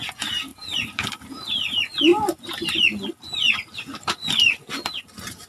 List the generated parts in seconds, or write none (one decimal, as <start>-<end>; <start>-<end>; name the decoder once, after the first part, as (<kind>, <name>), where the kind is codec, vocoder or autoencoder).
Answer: 0.5-1.3 (vocoder, BigVGAN v2); 2.1-5.5